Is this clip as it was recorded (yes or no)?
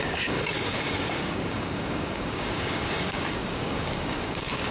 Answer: no